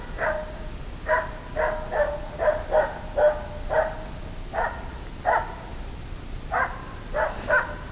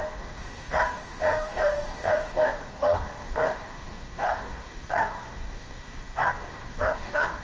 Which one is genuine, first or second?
first